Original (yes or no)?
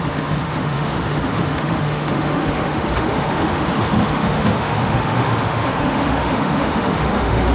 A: no